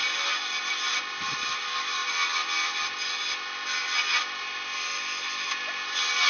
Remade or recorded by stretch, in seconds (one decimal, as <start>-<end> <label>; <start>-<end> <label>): 0.0-6.3 recorded